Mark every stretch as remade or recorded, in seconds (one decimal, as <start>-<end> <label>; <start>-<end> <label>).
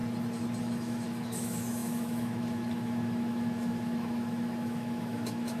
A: 0.0-0.6 recorded; 0.6-5.6 remade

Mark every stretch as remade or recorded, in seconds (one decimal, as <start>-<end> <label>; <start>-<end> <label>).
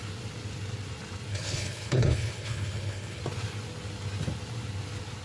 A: 0.0-1.3 recorded; 1.3-3.2 remade; 3.2-5.2 recorded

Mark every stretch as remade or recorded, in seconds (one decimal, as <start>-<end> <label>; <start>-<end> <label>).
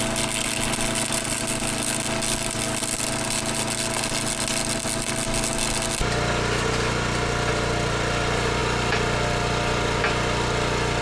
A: 0.0-11.0 recorded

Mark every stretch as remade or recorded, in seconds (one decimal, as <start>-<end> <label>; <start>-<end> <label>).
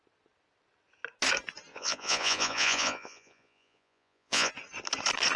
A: 0.0-1.7 recorded; 1.7-4.5 remade; 4.5-5.4 recorded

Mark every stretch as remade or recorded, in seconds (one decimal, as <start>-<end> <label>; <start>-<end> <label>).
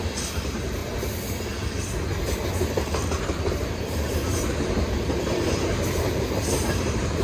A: 0.0-0.8 remade; 0.8-3.5 recorded; 3.5-7.2 remade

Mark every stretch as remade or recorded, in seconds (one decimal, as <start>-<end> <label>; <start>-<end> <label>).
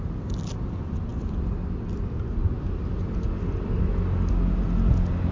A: 0.0-5.3 recorded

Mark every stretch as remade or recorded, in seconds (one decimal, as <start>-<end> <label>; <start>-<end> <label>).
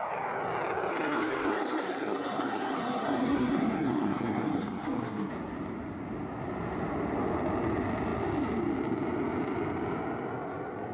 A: 0.0-0.9 recorded; 0.9-5.3 remade; 5.3-10.9 recorded